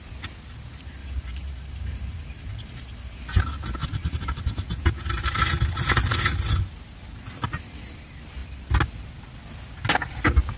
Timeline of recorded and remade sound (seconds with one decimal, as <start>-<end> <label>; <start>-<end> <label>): 0.0-1.0 recorded; 1.0-3.2 remade; 3.2-3.8 recorded; 3.8-4.4 remade; 4.4-10.6 recorded